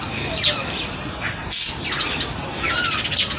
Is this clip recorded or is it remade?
recorded